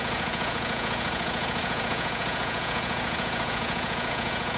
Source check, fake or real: fake